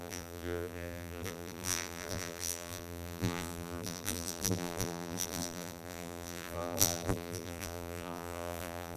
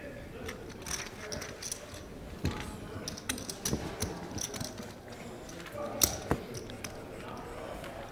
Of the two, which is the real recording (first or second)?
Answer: second